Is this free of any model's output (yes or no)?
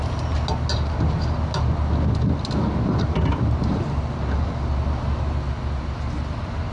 yes